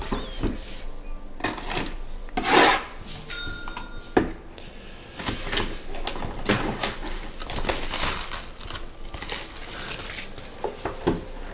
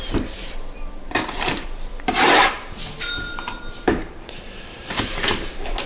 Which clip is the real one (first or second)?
first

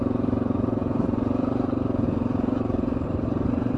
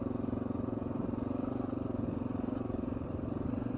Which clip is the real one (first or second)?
second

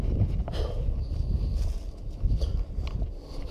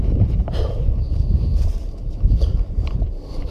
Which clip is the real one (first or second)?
first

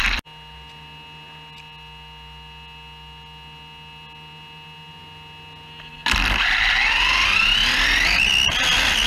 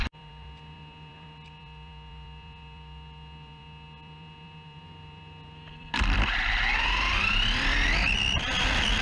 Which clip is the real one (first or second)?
first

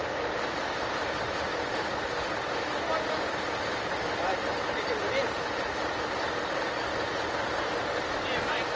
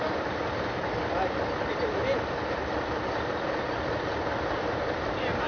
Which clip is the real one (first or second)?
first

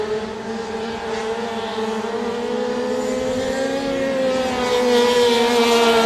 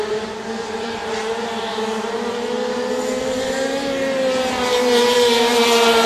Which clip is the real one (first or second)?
first